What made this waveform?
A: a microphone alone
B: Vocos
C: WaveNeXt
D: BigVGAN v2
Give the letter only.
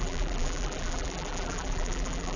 D